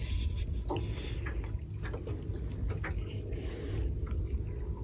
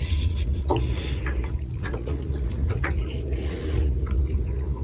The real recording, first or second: first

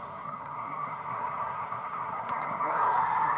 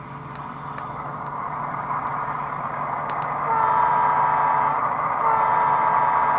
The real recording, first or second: second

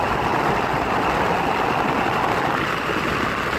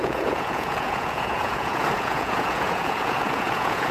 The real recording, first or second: first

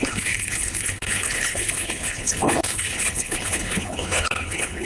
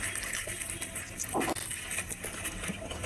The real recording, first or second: second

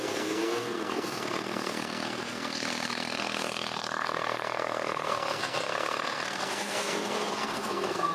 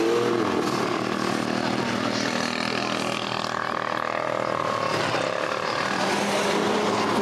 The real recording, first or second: second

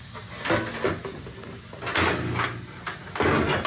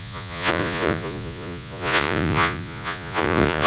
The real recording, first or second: first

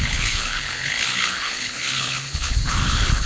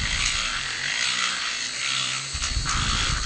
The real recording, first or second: second